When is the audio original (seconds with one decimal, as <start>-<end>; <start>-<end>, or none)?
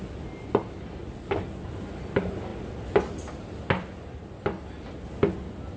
0.0-5.8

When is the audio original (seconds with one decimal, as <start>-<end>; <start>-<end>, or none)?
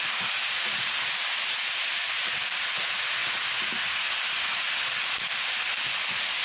0.0-6.4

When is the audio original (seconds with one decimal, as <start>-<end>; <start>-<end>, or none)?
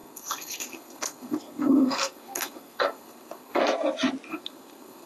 3.6-4.3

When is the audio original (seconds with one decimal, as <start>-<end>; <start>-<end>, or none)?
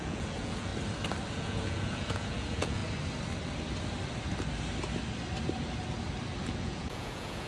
0.7-1.3; 2.8-6.4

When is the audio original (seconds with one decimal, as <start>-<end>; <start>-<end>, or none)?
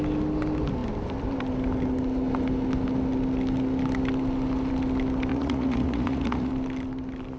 0.0-5.3; 6.5-7.4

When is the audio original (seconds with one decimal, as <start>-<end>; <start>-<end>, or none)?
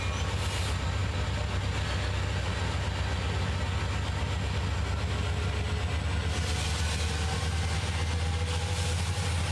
0.0-9.5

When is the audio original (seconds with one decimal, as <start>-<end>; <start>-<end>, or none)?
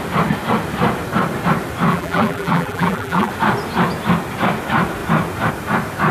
0.0-1.9; 3.3-6.1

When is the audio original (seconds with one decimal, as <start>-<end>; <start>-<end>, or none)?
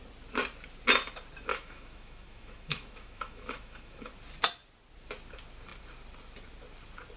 0.0-1.5; 4.1-7.2